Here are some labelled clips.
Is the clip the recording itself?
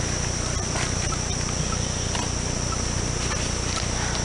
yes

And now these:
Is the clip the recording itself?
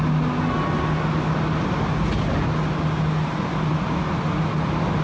yes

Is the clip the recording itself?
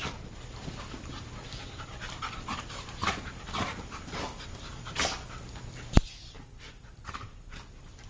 no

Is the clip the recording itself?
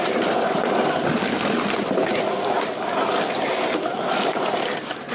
yes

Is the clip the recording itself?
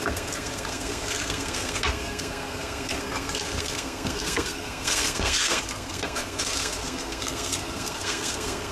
no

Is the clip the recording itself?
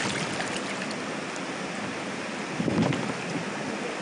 yes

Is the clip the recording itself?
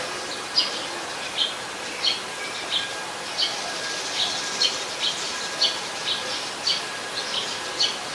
yes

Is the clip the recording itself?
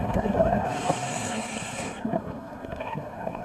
no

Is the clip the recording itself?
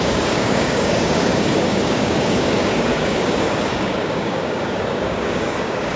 no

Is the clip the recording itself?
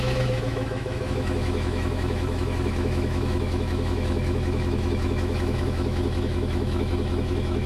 no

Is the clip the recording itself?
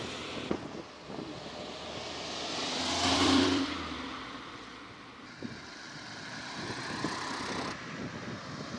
no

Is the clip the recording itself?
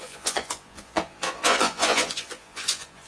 no